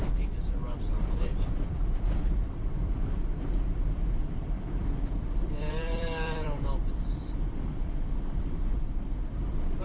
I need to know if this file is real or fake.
fake